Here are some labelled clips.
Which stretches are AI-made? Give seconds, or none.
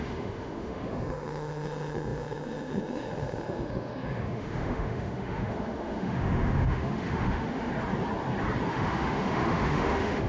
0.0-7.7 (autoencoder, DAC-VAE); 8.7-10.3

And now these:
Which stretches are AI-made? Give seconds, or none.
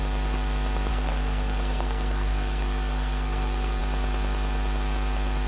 0.9-3.8 (codec, SNAC)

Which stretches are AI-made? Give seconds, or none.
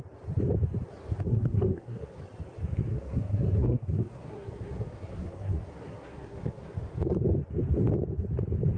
1.3-2.2 (codec, SNAC); 2.9-6.7